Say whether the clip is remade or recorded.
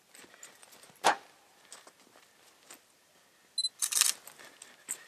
recorded